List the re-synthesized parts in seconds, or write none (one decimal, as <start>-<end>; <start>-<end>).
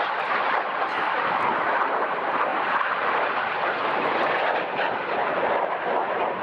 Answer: none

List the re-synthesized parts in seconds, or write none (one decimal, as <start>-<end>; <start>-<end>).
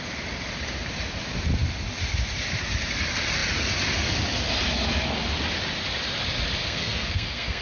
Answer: 6.6-7.6